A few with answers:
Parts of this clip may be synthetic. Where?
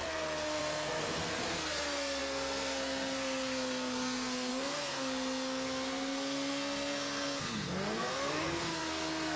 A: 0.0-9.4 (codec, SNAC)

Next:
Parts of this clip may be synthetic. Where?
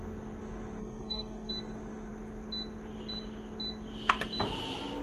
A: 0.8-1.5 (codec, SNAC)